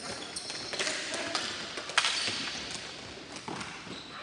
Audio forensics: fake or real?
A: real